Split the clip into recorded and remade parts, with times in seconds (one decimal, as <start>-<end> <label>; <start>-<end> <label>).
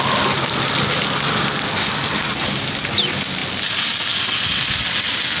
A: 0.0-5.4 recorded